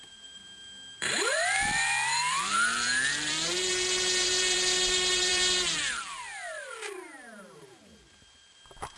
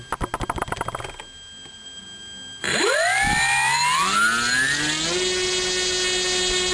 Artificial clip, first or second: first